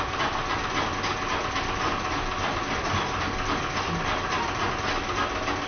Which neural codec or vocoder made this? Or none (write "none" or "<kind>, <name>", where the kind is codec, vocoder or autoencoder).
none